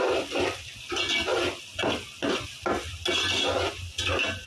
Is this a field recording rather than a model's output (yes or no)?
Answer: yes